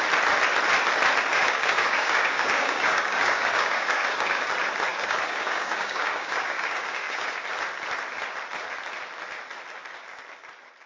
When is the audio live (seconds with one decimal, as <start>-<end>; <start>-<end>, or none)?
0.0-1.3; 4.5-4.9; 7.3-10.9